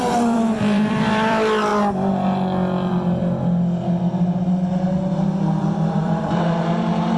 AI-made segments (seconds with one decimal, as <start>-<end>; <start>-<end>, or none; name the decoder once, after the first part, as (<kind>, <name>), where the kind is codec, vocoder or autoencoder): 0.0-1.7 (vocoder, BigVGAN v2); 5.6-7.2